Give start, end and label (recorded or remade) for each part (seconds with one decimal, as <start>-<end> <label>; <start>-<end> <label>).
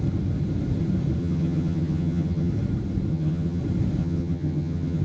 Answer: 0.0-1.2 recorded; 1.2-2.5 remade; 2.5-3.1 recorded; 3.1-3.6 remade; 3.6-4.0 recorded; 4.0-5.0 remade